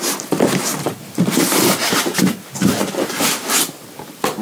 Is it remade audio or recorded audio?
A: remade